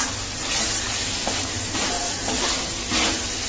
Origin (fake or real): real